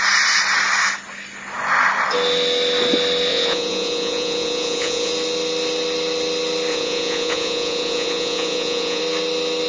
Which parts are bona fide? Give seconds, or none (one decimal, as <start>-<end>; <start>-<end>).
0.0-3.3; 5.1-6.7; 9.0-9.7